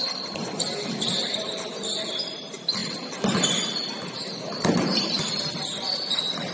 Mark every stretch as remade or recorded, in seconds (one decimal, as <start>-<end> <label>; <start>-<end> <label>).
0.0-2.8 remade; 2.8-4.4 recorded; 4.4-6.5 remade

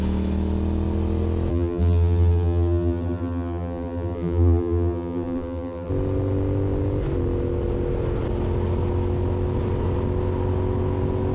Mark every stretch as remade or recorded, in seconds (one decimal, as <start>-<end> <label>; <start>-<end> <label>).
0.0-1.5 recorded; 1.5-5.9 remade; 5.9-11.3 recorded

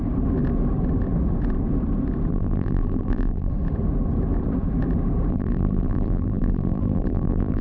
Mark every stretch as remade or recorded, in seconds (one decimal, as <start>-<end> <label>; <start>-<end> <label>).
0.0-2.3 recorded; 2.3-3.5 remade; 3.5-5.3 recorded; 5.3-7.6 remade

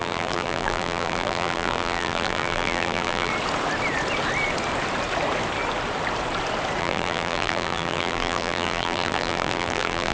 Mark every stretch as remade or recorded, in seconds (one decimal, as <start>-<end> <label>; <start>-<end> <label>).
0.0-3.3 remade; 3.3-6.8 recorded; 6.8-10.1 remade

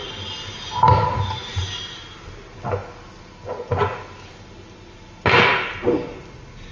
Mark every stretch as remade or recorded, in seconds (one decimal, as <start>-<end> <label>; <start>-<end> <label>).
0.0-1.6 remade; 1.6-6.7 recorded

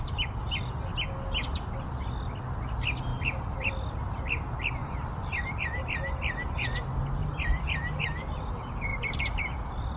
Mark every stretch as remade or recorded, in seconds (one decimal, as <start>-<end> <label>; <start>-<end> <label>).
0.0-3.1 recorded; 3.1-3.7 remade; 3.7-4.8 recorded; 4.8-6.8 remade; 6.8-7.2 recorded; 7.2-8.4 remade; 8.4-10.0 recorded

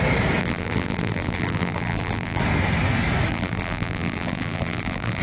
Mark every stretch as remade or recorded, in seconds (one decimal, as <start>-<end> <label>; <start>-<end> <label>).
0.0-0.4 recorded; 0.4-2.4 remade; 2.4-3.3 recorded; 3.3-5.2 remade

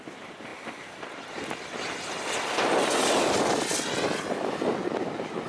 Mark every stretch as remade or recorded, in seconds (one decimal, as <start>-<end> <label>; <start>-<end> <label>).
0.0-5.5 recorded